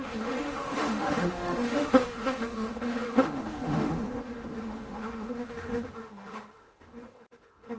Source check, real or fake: fake